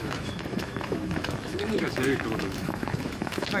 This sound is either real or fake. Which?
fake